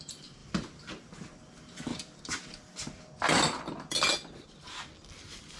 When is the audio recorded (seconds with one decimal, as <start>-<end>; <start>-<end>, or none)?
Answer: 0.0-0.4; 0.9-1.9; 3.9-5.6